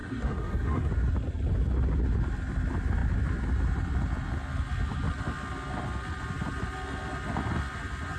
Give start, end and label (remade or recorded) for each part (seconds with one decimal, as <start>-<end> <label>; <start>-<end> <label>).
0.0-0.9 remade; 0.9-8.2 recorded